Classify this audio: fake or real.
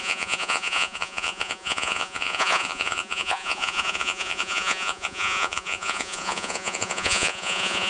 fake